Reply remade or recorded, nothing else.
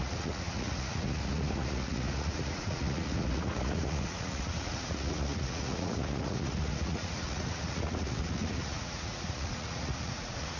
remade